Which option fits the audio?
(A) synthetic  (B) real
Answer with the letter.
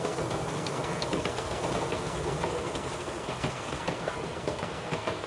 A